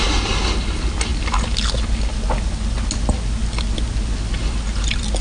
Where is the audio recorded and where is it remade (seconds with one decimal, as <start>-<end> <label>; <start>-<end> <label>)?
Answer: 0.0-5.2 recorded